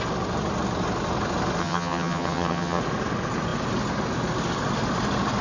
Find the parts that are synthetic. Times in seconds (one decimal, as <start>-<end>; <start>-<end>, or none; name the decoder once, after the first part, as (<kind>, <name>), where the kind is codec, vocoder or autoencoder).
1.6-2.8 (vocoder, HiFi-GAN)